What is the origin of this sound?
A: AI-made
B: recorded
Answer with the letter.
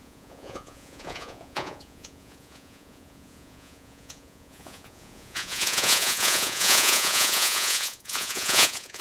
A